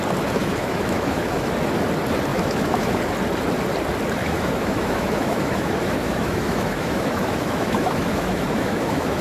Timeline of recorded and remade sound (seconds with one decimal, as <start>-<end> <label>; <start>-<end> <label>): 0.0-0.4 recorded; 0.4-1.5 remade; 1.5-2.3 recorded; 2.3-3.0 remade; 3.0-4.2 recorded; 4.2-9.2 remade